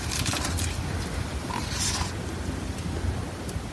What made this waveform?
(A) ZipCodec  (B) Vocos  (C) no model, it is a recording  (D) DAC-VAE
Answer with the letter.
C